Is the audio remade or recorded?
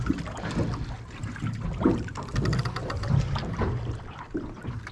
recorded